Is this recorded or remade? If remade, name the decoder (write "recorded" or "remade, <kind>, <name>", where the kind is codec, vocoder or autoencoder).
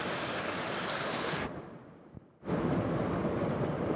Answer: recorded